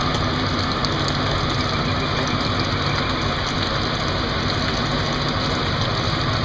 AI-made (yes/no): no